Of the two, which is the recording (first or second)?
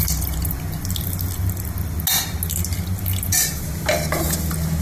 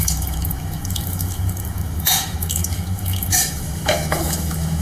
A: first